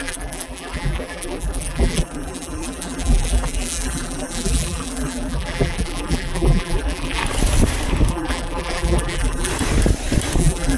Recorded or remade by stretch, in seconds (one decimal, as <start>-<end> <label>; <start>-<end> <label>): 0.0-7.2 remade; 7.2-8.1 recorded; 8.1-9.5 remade; 9.5-10.4 recorded; 10.4-10.8 remade